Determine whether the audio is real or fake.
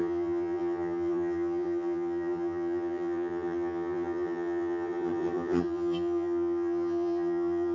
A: fake